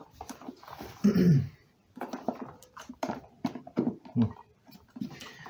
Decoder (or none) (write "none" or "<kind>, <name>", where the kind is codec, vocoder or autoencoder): vocoder, BigVGAN v2